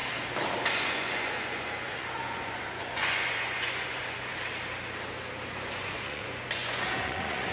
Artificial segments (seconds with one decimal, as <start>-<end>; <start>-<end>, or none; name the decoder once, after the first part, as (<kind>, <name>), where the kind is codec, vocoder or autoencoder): 0.7-4.3 (vocoder, Vocos); 5.5-7.5